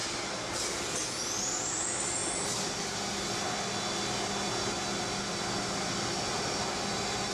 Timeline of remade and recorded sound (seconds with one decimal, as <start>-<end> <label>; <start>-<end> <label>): 0.0-7.3 recorded